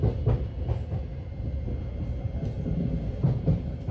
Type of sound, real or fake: real